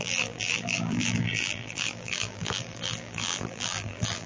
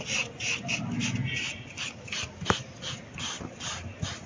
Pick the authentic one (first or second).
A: second